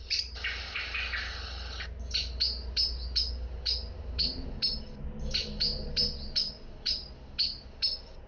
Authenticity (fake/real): real